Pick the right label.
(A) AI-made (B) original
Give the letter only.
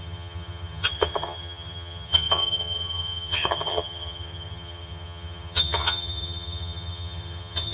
A